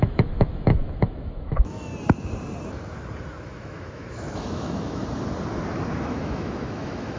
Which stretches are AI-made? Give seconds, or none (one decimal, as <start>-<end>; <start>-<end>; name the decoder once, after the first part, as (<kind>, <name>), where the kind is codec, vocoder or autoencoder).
0.0-1.9 (autoencoder, DAC-VAE); 3.4-5.0; 6.0-7.2